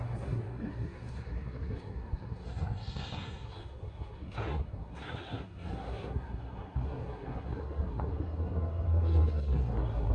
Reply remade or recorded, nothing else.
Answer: remade